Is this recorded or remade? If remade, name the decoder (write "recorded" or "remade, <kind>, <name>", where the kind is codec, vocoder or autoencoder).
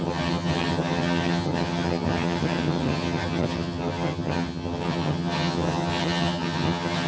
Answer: remade, vocoder, HiFi-GAN